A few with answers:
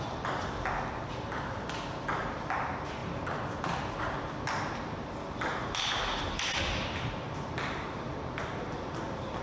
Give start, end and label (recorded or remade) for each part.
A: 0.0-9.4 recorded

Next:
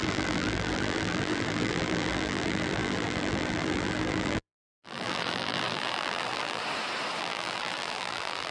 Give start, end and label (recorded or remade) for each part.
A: 0.0-6.6 remade; 6.6-7.2 recorded; 7.2-8.5 remade

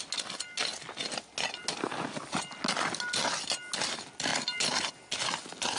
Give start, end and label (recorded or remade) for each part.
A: 0.0-5.8 recorded

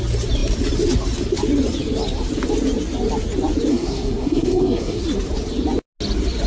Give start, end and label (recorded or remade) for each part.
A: 0.0-3.7 recorded; 3.7-5.0 remade; 5.0-6.5 recorded

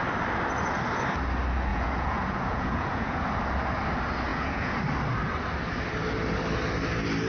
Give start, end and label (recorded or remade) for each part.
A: 0.0-1.7 recorded; 1.7-3.2 remade; 3.2-4.3 recorded; 4.3-4.8 remade; 4.8-7.3 recorded

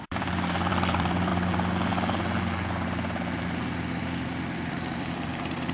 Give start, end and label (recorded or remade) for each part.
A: 0.0-1.3 remade; 1.3-4.7 recorded; 4.7-5.7 remade

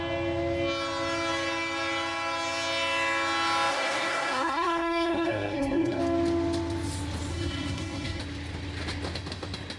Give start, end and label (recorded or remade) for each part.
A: 0.0-3.7 recorded; 3.7-6.0 remade; 6.0-7.3 recorded; 7.3-8.2 remade; 8.2-9.8 recorded